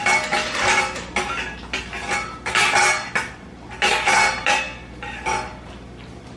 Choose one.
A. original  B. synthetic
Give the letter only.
A